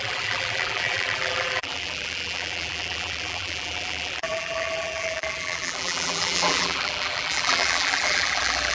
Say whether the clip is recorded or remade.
remade